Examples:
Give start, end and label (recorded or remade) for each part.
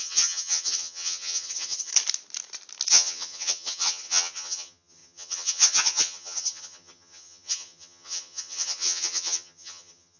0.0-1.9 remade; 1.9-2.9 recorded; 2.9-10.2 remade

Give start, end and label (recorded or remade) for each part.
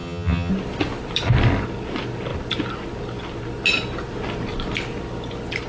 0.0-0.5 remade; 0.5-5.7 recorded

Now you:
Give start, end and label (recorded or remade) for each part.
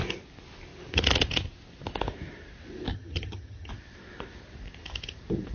0.0-2.9 recorded; 2.9-3.7 remade; 3.7-5.5 recorded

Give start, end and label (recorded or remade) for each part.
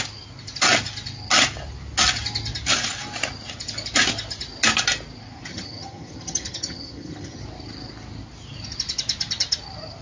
0.0-5.5 recorded; 5.5-7.4 remade; 7.4-10.0 recorded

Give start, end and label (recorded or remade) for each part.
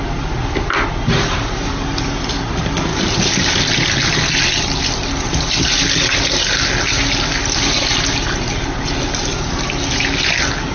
0.0-10.7 recorded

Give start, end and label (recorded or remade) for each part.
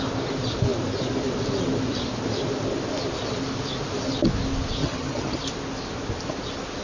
0.0-4.8 recorded; 4.8-5.4 remade; 5.4-6.8 recorded